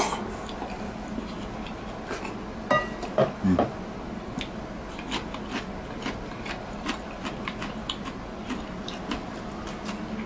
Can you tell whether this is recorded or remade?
recorded